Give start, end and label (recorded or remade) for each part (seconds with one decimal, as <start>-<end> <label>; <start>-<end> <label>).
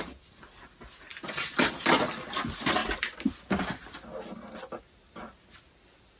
0.0-6.2 recorded